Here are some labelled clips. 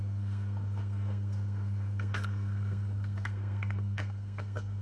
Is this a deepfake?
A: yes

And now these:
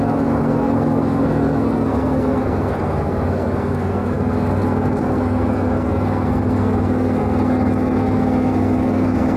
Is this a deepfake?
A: yes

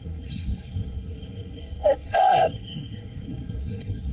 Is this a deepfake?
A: yes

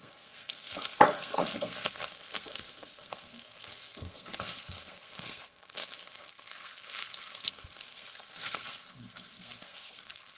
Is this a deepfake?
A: yes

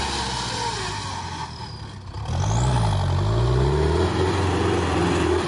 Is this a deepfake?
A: no